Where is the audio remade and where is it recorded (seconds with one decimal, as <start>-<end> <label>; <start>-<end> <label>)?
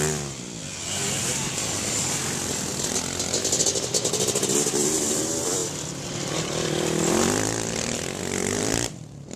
0.0-2.7 remade; 2.7-3.6 recorded; 3.6-5.6 remade; 5.6-8.2 recorded; 8.2-9.4 remade